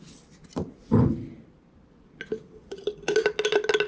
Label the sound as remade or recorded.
recorded